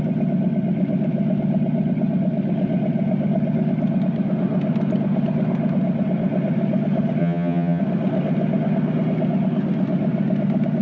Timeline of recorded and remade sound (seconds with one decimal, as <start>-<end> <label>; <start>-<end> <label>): 0.0-7.2 recorded; 7.2-7.8 remade; 7.8-10.8 recorded